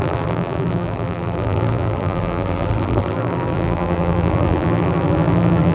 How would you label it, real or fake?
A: fake